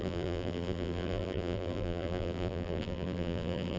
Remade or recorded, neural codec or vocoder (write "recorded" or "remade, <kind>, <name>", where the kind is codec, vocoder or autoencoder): remade, vocoder, BigVGAN v2